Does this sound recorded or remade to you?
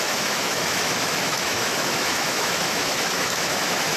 remade